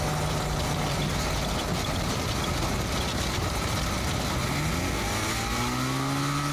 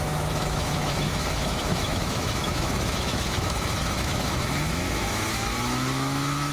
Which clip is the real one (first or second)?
first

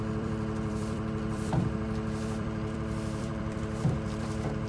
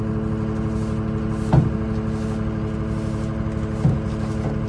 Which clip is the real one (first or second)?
second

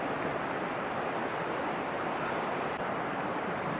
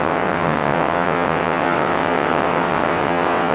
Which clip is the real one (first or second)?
first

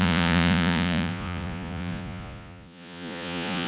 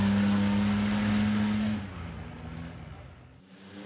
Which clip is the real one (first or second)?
second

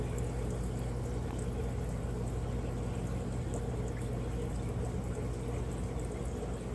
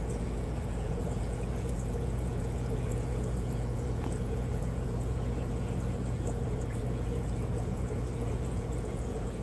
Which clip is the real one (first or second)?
first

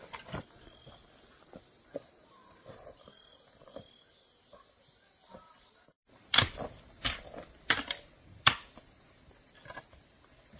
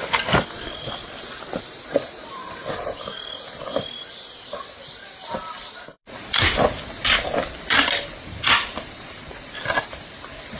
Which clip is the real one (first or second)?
second